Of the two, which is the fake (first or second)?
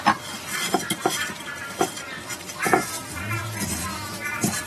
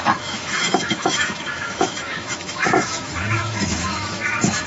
second